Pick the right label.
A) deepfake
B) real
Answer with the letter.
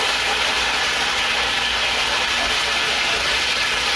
B